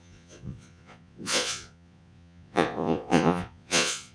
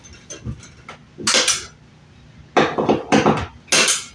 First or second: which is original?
second